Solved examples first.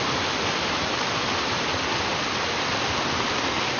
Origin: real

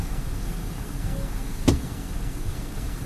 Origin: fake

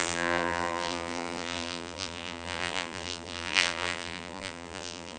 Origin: fake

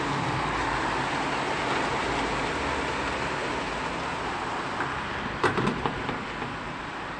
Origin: real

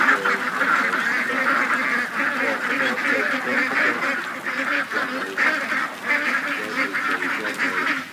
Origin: real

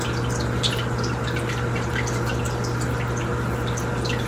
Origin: real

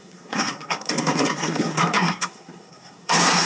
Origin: fake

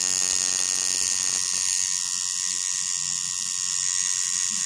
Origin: real